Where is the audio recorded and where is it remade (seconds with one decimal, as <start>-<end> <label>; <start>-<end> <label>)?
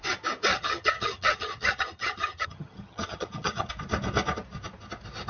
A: 0.0-0.5 recorded; 0.5-3.7 remade; 3.7-5.3 recorded